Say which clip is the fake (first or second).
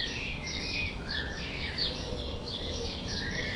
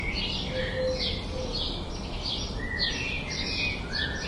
first